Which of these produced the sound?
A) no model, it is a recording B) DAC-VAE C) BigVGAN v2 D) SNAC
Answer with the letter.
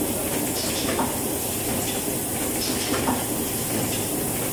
A